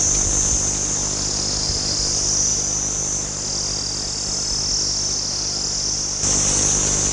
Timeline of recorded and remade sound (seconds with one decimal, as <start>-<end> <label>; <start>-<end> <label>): 0.0-7.1 recorded